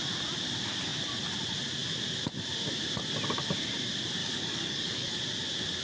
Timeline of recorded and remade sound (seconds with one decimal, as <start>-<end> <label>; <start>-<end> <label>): 0.0-4.2 recorded; 4.2-5.2 remade; 5.2-5.8 recorded